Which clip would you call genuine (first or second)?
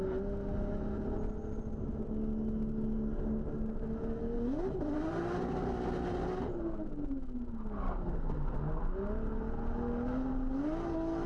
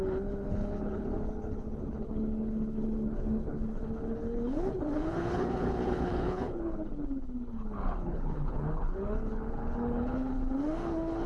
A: first